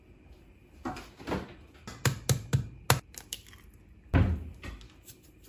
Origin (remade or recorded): recorded